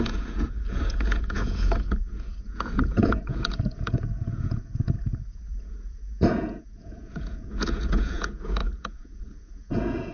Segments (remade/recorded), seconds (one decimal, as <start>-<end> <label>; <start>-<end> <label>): 0.0-10.1 remade